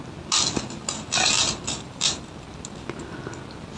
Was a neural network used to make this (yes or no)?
no